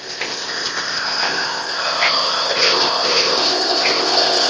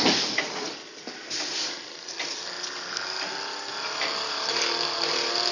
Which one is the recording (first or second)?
second